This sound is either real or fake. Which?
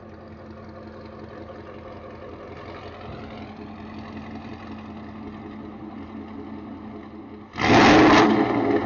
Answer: real